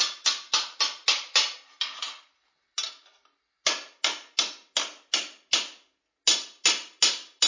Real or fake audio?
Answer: real